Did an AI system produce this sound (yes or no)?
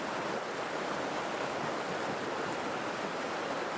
no